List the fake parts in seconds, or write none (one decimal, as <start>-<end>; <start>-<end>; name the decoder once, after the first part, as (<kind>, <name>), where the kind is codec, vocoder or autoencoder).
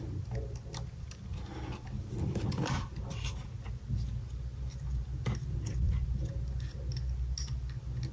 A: none